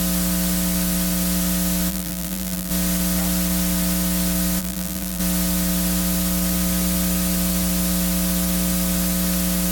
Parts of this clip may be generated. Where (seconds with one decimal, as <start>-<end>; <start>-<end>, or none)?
1.9-2.7; 4.6-5.2